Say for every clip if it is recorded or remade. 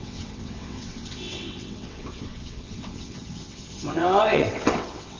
remade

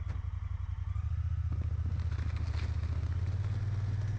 recorded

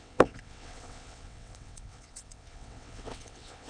remade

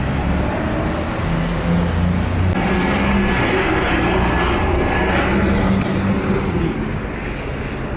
recorded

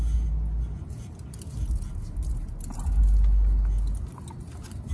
recorded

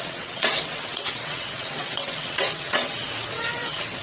remade